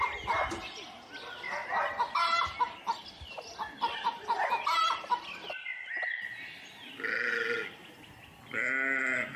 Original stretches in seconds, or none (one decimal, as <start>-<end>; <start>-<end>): 0.0-9.4